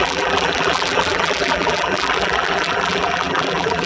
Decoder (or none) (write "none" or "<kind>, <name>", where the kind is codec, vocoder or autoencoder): vocoder, BigVGAN v2